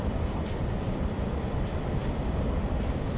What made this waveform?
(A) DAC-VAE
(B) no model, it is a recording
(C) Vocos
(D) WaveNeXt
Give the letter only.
B